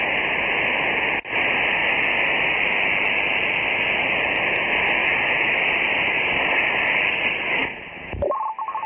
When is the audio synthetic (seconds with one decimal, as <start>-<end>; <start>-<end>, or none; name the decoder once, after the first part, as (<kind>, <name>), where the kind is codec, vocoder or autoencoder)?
none